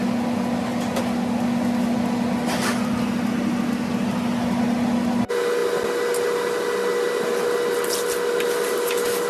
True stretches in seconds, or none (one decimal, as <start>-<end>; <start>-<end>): 0.0-9.3